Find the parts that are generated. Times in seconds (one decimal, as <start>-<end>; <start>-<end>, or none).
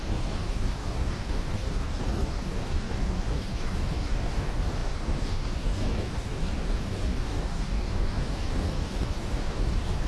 0.0-10.1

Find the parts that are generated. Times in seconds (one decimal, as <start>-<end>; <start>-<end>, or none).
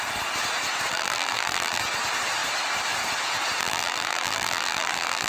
0.9-1.8; 3.6-5.3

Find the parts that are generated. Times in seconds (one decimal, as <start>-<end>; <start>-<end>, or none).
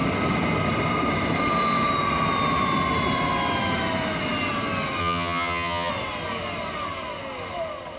5.0-5.9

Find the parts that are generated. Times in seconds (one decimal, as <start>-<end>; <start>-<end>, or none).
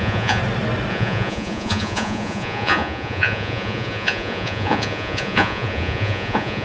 0.0-0.4; 0.9-6.6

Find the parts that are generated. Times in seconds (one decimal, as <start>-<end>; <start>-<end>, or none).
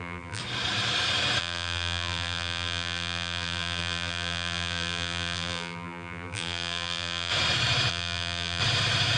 0.0-0.4; 1.4-7.3; 7.9-8.6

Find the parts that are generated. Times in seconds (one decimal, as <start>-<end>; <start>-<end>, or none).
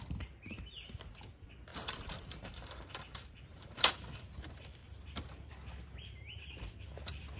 1.7-3.9; 4.8-5.5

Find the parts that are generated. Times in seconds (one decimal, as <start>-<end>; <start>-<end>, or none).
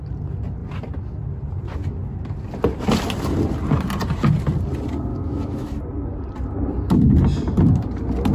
5.1-5.8